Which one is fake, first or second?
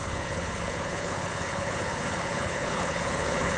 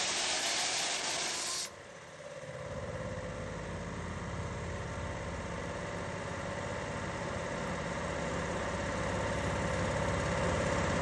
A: first